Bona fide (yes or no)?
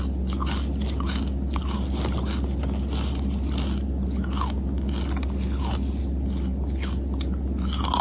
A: yes